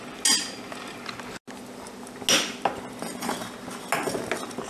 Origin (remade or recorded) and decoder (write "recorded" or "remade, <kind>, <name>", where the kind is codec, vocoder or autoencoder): recorded